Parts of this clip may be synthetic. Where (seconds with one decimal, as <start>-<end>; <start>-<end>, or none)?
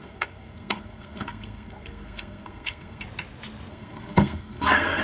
0.0-3.0; 3.7-5.0